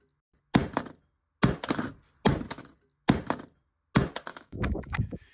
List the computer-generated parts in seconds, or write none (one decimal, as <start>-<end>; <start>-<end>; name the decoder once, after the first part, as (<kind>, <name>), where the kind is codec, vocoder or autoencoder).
4.3-5.3 (autoencoder, DAC-VAE)